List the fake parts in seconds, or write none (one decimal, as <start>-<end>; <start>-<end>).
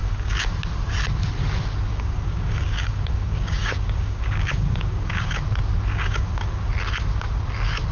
0.0-0.5; 1.9-5.4; 5.9-6.7